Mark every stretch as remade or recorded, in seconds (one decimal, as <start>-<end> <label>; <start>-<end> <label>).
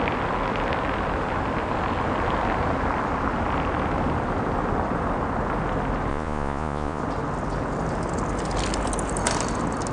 0.0-6.1 recorded; 6.1-7.0 remade; 7.0-9.9 recorded